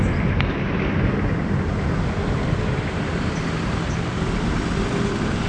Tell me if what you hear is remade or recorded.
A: recorded